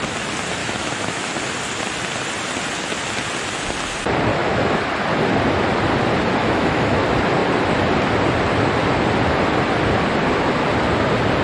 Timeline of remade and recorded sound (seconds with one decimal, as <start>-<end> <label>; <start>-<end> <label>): 0.0-0.6 recorded; 0.6-1.3 remade; 1.3-4.3 recorded; 4.3-4.8 remade; 4.8-6.4 recorded; 6.4-7.0 remade; 7.0-11.4 recorded